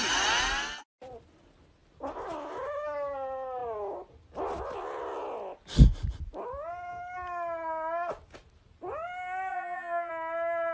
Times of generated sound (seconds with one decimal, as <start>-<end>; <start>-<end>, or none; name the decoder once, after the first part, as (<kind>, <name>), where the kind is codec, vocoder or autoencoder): 9.5-10.1 (vocoder, Vocos)

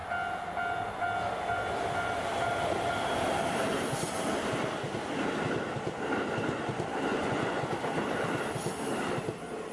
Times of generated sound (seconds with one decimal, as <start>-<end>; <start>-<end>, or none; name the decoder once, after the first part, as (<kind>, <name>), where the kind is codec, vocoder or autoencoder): 7.1-7.7 (vocoder, Vocos)

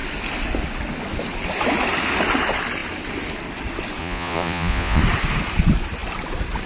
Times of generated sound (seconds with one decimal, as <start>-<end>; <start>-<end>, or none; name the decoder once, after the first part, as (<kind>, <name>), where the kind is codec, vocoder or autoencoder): 4.0-5.0 (vocoder, Vocos)

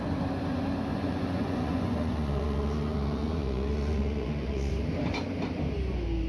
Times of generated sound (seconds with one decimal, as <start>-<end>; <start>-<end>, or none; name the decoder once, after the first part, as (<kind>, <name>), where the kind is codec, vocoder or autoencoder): 0.9-4.7 (vocoder, Vocos)

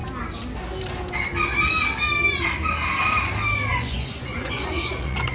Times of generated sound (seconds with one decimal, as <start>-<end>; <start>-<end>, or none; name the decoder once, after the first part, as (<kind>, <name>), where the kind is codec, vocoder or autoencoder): 3.7-5.3 (vocoder, Vocos)

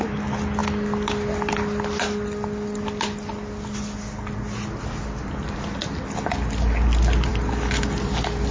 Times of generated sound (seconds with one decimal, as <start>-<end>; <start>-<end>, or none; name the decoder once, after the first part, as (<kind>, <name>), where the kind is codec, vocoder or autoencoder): none

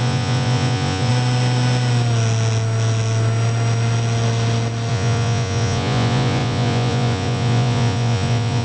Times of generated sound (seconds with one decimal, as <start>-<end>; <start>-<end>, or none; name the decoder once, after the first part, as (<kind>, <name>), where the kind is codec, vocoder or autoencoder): 0.0-1.1 (vocoder, Vocos); 4.9-8.6